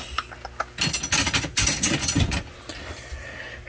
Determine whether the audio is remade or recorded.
recorded